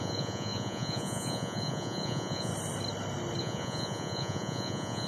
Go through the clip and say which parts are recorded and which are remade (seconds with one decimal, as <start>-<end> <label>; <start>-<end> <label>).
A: 0.0-2.5 remade; 2.5-3.4 recorded; 3.4-5.1 remade